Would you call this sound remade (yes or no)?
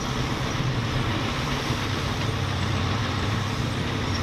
yes